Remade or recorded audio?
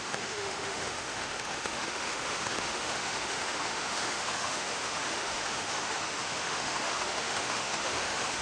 remade